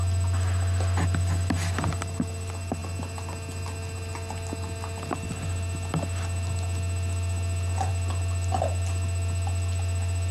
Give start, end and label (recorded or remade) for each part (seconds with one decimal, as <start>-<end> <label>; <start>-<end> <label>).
0.0-10.3 recorded